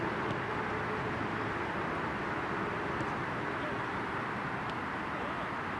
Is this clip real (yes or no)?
yes